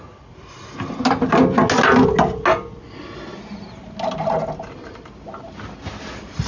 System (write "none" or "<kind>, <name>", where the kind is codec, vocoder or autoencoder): none